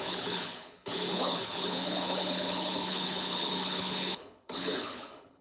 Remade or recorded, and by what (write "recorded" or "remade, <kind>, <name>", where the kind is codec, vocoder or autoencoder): remade, codec, HILCodec